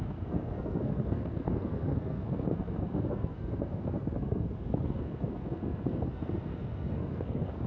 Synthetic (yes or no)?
yes